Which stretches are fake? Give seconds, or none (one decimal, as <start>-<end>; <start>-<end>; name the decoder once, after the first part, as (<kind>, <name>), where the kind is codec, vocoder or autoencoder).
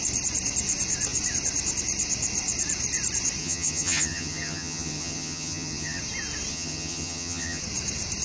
3.4-6.0 (vocoder, HiFi-GAN); 6.5-7.6